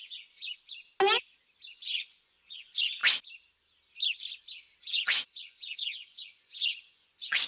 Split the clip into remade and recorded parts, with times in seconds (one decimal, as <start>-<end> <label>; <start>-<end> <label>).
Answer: 0.0-0.4 remade; 0.4-1.7 recorded; 1.7-3.0 remade; 3.0-4.8 recorded; 4.8-7.5 remade